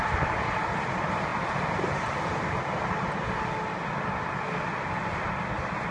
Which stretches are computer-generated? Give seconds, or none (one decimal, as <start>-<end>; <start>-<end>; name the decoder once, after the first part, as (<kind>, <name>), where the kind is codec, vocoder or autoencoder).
none